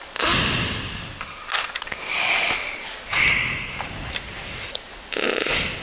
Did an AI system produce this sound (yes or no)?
no